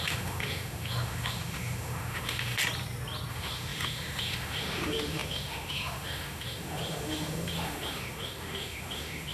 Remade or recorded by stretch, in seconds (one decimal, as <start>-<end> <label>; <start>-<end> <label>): 0.0-2.6 remade; 2.6-3.3 recorded; 3.3-9.3 remade